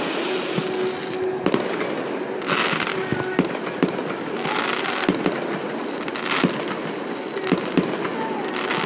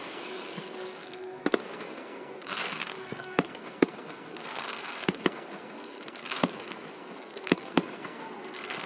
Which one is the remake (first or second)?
second